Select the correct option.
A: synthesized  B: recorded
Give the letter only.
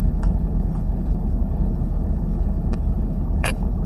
A